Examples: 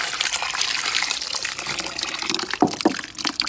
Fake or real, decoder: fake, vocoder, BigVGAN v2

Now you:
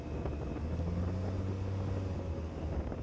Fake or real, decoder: real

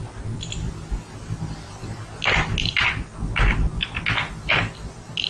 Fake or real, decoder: real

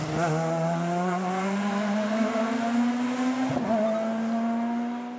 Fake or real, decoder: real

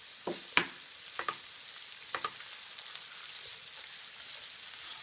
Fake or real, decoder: real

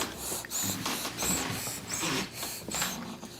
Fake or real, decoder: real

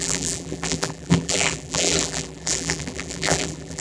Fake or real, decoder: fake, vocoder, BigVGAN v2